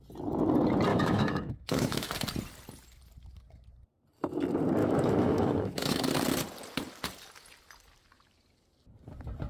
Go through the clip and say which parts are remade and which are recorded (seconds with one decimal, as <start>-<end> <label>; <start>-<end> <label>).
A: 0.0-0.9 recorded; 0.9-2.1 remade; 2.1-4.8 recorded; 4.8-6.0 remade; 6.0-9.5 recorded